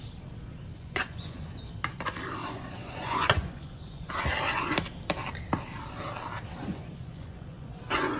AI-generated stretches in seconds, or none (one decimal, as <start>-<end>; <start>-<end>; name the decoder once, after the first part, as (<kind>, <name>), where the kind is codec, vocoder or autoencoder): 0.7-1.6 (vocoder, Vocos); 2.4-4.1; 6.6-8.2